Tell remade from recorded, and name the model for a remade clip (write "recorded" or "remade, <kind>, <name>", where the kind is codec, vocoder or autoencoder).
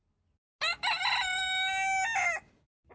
recorded